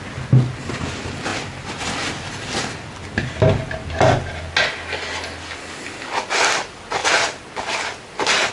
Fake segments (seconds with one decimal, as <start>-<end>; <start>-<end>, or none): none

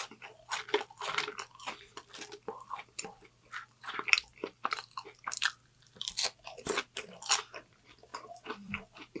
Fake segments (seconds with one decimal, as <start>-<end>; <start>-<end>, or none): none

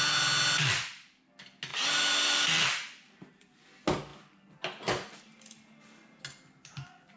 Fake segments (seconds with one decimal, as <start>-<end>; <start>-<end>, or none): none

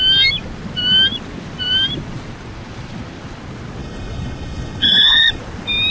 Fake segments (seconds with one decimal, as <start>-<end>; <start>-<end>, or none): 3.8-5.4

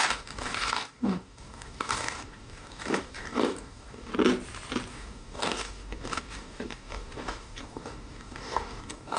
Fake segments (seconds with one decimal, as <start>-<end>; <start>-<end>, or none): 0.0-4.1; 4.9-9.2

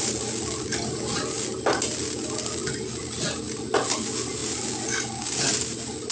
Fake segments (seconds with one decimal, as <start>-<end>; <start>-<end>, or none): none

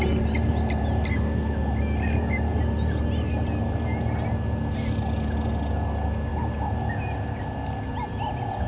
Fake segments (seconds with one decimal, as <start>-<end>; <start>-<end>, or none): none